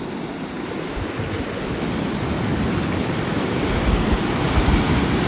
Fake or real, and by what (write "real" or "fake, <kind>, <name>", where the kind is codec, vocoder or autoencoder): real